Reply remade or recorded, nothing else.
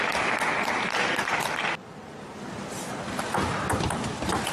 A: recorded